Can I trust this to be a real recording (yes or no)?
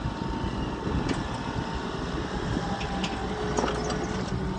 yes